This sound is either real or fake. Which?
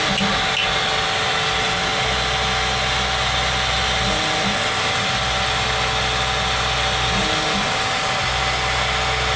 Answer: real